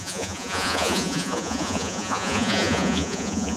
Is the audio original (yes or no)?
no